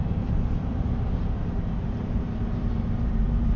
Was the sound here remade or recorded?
remade